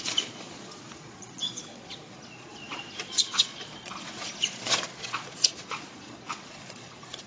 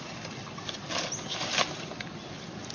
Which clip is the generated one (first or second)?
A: first